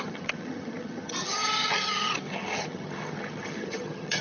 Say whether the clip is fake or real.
fake